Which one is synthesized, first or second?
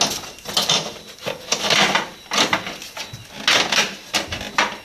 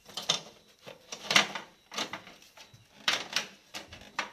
second